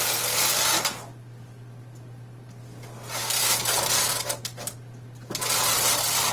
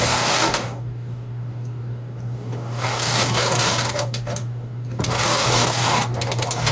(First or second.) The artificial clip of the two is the second